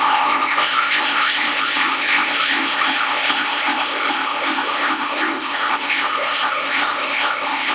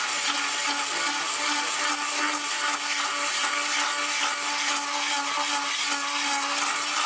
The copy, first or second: first